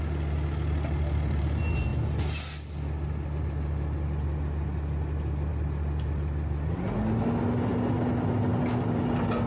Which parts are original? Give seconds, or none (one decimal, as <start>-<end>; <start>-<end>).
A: 0.0-9.5